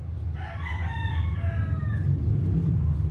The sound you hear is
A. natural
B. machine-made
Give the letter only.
A